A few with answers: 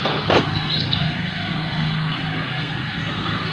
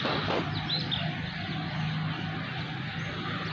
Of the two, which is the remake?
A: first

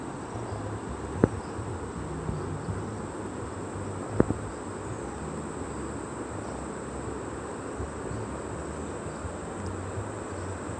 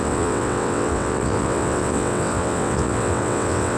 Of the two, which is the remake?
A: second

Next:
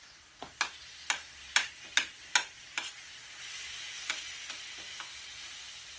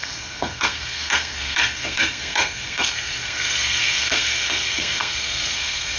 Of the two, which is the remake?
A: second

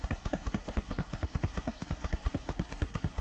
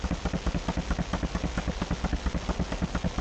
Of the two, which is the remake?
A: first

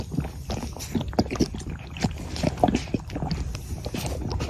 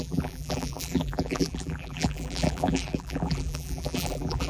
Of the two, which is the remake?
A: second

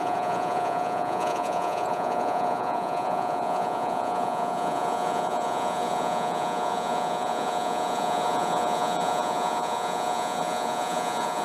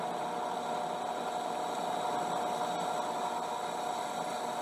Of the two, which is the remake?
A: first